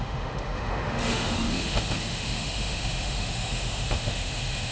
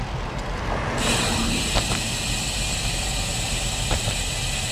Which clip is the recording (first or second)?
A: second